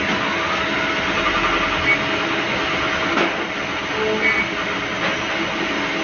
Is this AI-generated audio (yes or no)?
no